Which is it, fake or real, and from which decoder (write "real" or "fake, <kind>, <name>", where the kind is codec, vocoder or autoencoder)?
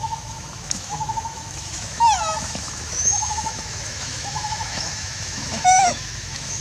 fake, autoencoder, DAC-VAE